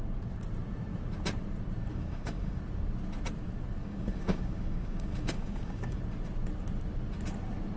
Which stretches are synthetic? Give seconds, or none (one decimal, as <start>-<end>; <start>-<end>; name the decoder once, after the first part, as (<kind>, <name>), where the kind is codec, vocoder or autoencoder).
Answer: 1.9-2.6 (codec, DAC); 3.8-6.0